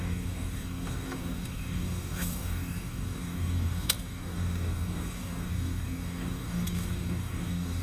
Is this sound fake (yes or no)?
yes